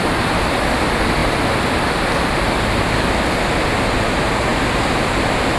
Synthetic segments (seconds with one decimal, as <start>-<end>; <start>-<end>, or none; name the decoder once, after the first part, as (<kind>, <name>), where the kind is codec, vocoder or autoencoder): none